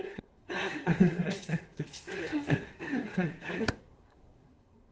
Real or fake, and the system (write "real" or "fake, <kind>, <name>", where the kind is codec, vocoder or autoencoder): fake, codec, SNAC